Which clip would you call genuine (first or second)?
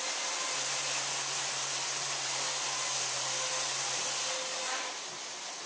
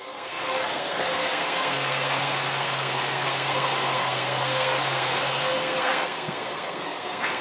first